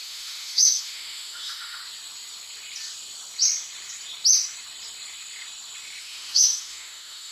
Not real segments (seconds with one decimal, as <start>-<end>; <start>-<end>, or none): 0.0-1.8; 6.0-7.3